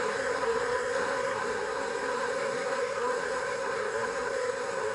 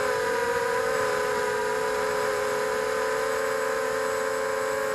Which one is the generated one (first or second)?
first